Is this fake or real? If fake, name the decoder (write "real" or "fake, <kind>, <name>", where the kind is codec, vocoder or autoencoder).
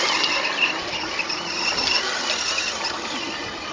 real